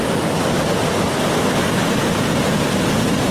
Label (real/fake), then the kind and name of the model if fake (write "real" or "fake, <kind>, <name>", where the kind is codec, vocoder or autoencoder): real